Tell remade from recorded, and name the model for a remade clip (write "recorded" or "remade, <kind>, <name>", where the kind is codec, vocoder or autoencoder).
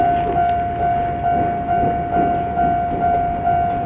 recorded